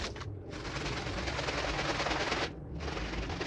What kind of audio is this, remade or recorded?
recorded